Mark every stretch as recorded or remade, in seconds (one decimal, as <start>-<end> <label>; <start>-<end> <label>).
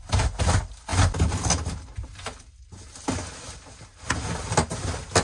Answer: 0.0-5.2 recorded